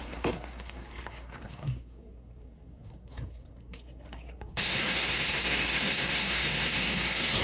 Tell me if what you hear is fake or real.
fake